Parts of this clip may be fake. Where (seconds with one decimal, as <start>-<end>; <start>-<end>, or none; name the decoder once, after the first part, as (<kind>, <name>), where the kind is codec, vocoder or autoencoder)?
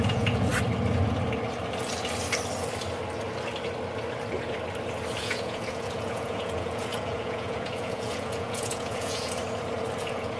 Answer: 0.0-0.5 (vocoder, Vocos); 5.2-9.4; 10.0-10.4